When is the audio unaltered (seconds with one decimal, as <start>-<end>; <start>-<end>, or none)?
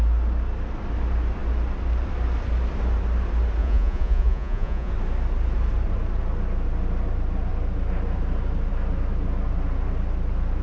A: 0.0-3.6; 4.9-10.6